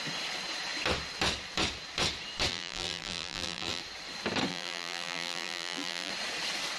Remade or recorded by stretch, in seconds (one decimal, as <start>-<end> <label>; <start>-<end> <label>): 0.0-2.5 recorded; 2.5-3.8 remade; 3.8-4.5 recorded; 4.5-6.1 remade; 6.1-6.8 recorded

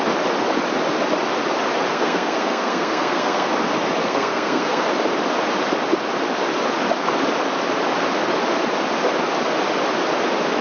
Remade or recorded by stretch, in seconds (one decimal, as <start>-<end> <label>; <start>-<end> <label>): 0.0-1.9 recorded; 1.9-3.5 remade; 3.5-4.0 recorded; 4.0-4.9 remade; 4.9-10.6 recorded

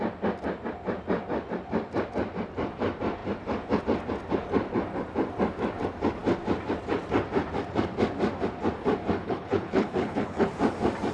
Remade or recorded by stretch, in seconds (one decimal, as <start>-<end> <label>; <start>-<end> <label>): 0.0-9.2 recorded; 9.2-10.5 remade; 10.5-11.1 recorded

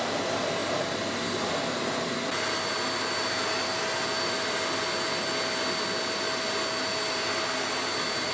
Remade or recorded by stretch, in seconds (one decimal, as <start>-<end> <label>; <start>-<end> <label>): 0.0-8.3 recorded

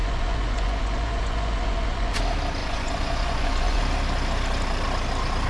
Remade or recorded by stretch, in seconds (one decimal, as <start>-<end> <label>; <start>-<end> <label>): 0.0-2.2 remade; 2.2-2.6 recorded; 2.6-3.8 remade; 3.8-5.5 recorded